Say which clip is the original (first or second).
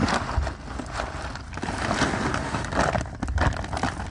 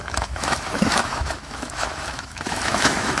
first